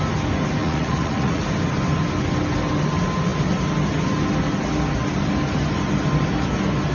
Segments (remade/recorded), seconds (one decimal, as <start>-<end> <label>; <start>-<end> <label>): 0.0-0.6 recorded; 0.6-1.4 remade; 1.4-6.9 recorded

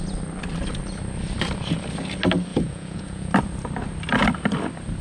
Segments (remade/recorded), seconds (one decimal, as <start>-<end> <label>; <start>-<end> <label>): 0.0-2.5 recorded; 2.5-3.3 remade; 3.3-5.0 recorded

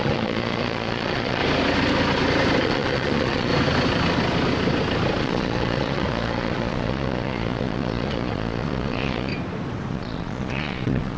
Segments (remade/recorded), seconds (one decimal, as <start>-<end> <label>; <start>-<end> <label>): 0.0-1.4 remade; 1.4-2.6 recorded; 2.6-3.5 remade; 3.5-5.2 recorded; 5.2-9.3 remade; 9.3-9.9 recorded; 9.9-11.2 remade

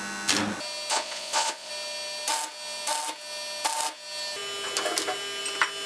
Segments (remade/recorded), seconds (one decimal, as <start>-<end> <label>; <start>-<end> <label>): 0.0-0.9 recorded; 0.9-1.7 remade; 1.7-5.9 recorded